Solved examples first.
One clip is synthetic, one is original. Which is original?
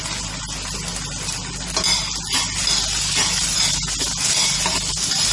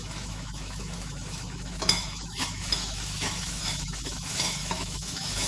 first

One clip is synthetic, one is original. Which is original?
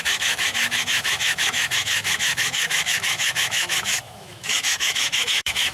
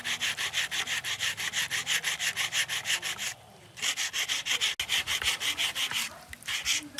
second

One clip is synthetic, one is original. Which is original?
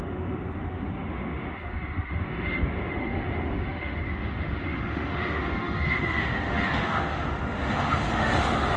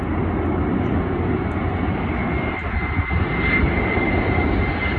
second